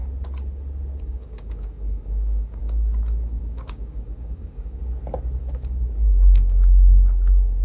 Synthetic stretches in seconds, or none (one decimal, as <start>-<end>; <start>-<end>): 1.0-4.8; 5.4-7.6